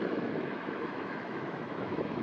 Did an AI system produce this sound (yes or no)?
yes